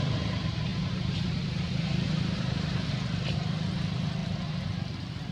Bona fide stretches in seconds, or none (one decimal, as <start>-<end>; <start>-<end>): 0.0-0.7; 2.9-5.3

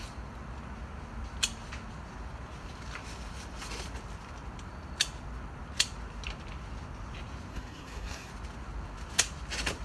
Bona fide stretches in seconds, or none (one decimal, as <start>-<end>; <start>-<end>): 0.0-7.5; 8.3-9.8

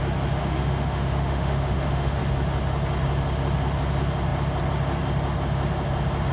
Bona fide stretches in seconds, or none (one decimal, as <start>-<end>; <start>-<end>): 0.0-0.4; 2.2-6.3

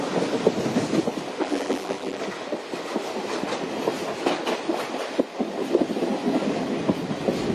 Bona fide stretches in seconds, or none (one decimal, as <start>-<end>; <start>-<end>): 0.0-1.4; 2.2-7.5

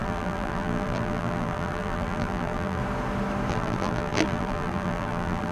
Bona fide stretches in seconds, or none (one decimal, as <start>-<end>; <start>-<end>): 2.8-3.5